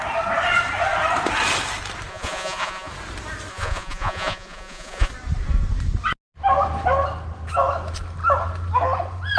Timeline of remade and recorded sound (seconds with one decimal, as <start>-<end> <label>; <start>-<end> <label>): 0.0-2.1 recorded; 2.1-2.9 remade; 2.9-3.5 recorded; 3.5-5.1 remade; 5.1-9.4 recorded